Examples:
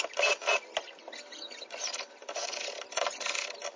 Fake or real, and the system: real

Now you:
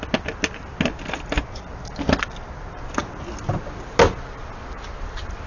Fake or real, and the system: real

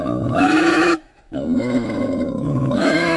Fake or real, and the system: fake, autoencoder, DAC-VAE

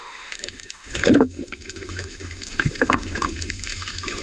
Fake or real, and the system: fake, autoencoder, DAC-VAE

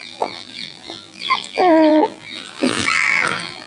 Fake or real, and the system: fake, vocoder, BigVGAN v2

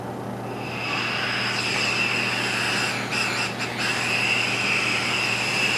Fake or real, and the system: real